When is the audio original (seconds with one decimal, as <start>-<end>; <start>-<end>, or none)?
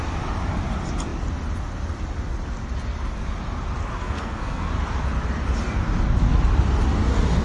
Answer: 0.0-3.9; 4.7-7.4